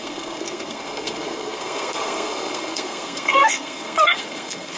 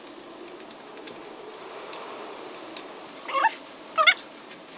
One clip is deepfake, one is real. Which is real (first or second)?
second